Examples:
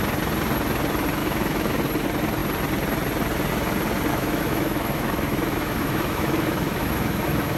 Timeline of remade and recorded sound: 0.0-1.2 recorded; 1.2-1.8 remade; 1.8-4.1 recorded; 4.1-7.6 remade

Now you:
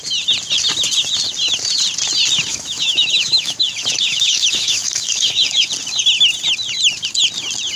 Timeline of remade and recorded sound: 0.0-2.5 recorded; 2.5-5.7 remade; 5.7-7.8 recorded

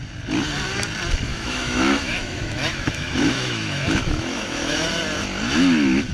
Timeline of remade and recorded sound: 0.0-1.3 recorded; 1.3-4.9 remade; 4.9-6.1 recorded

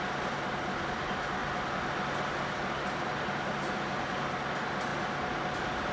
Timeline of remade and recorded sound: 0.0-5.9 recorded

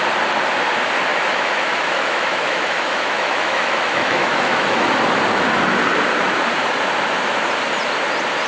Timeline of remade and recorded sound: 0.0-1.1 recorded; 1.1-4.9 remade; 4.9-8.5 recorded